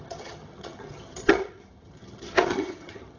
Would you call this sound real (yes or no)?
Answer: no